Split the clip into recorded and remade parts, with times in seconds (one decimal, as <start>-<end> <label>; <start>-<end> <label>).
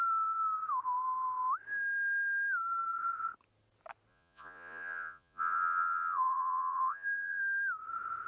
0.0-4.1 recorded; 4.1-7.4 remade; 7.4-8.3 recorded